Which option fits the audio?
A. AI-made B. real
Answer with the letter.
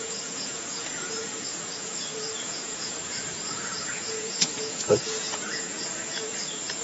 A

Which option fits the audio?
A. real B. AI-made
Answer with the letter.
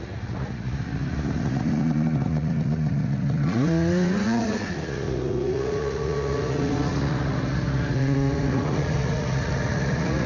B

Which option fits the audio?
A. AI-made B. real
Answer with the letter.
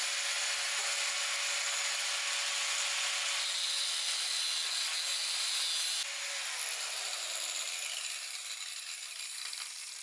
B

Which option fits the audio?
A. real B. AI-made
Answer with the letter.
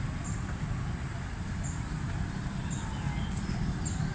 A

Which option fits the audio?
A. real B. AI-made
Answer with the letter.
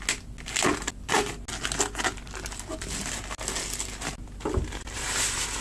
A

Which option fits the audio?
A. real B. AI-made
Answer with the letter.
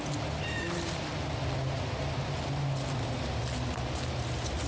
A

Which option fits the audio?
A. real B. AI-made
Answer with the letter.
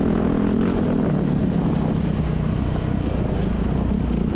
A